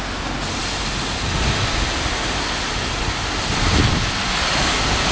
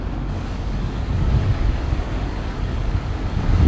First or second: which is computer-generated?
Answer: second